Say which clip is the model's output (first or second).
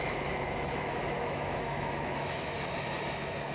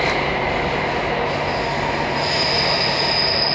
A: first